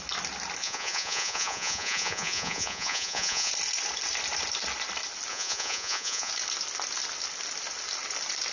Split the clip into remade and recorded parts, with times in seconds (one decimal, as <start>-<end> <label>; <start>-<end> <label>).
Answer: 0.0-0.6 recorded; 0.6-3.5 remade; 3.5-5.3 recorded; 5.3-6.3 remade; 6.3-8.5 recorded